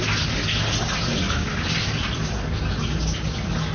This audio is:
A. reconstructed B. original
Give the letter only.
B